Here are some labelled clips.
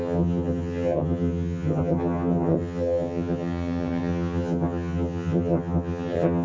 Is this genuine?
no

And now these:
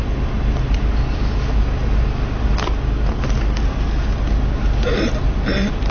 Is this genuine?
yes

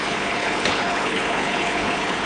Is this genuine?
no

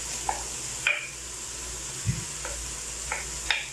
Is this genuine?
yes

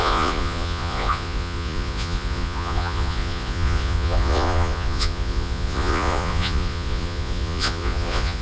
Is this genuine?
no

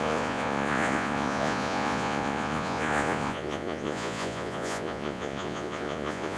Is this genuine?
no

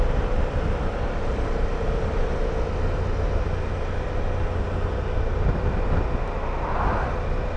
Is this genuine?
yes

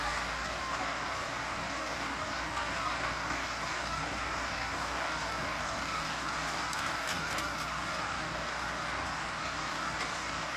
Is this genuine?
no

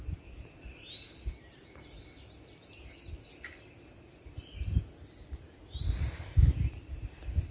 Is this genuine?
yes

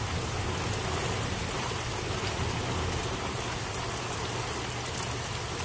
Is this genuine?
yes